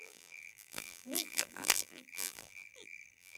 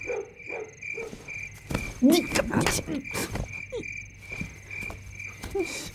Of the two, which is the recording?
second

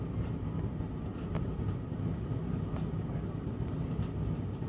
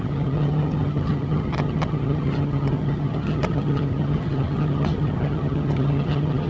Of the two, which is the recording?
first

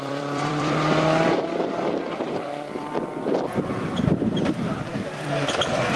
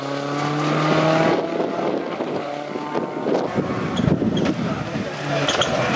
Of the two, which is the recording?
second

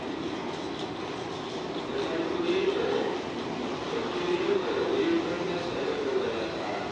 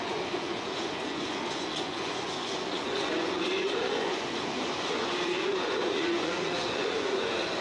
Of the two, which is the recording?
first